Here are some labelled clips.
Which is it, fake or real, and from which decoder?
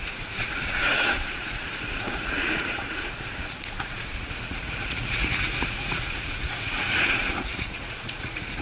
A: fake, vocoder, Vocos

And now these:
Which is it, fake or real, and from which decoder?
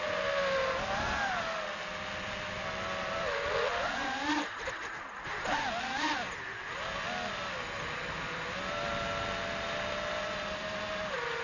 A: real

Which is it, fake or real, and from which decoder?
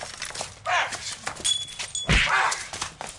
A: real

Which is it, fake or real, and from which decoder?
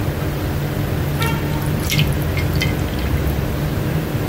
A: real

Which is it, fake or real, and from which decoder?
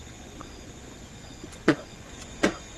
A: fake, vocoder, Vocos